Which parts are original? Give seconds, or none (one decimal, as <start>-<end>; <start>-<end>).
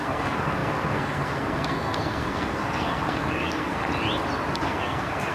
3.8-4.5